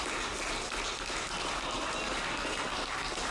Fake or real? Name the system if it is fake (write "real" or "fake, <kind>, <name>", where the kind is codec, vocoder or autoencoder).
real